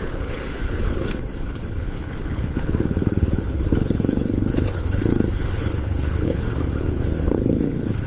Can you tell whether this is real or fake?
fake